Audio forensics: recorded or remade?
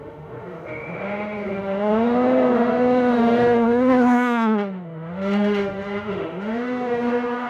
remade